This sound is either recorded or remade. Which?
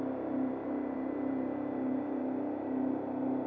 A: remade